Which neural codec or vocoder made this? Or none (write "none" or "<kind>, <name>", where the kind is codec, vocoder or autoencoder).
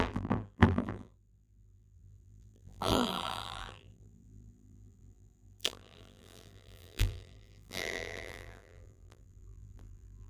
vocoder, BigVGAN v2